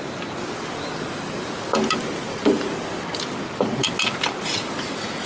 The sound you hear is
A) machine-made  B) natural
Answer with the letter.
B